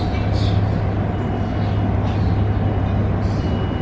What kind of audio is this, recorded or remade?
recorded